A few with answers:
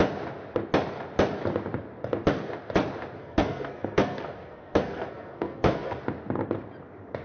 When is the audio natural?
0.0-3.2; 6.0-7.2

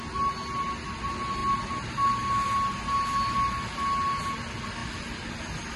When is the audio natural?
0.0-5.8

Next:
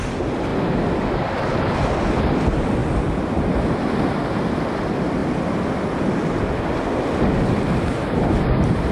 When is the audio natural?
0.0-8.9

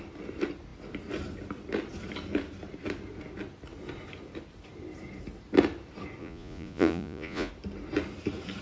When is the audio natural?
0.0-6.2; 7.5-8.6